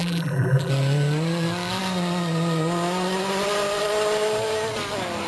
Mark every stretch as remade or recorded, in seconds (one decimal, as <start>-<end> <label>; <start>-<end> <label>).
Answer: 0.0-0.7 remade; 0.7-5.3 recorded